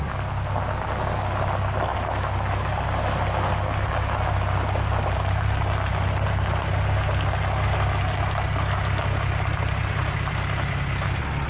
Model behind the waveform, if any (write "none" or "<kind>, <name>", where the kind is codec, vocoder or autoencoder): none